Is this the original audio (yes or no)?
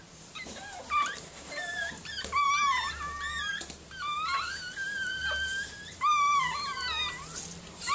yes